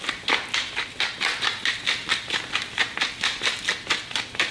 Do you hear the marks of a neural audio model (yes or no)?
no